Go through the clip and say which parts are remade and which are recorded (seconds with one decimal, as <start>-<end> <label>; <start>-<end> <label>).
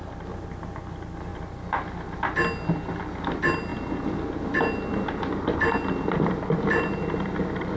0.0-7.8 recorded